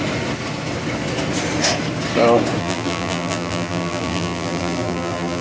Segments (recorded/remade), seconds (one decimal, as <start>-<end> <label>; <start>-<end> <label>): 0.0-2.6 recorded; 2.6-5.4 remade